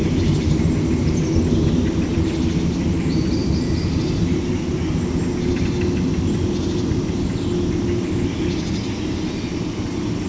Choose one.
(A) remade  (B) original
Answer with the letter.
B